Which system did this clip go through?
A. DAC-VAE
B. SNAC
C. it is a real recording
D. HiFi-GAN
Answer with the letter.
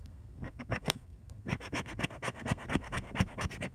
B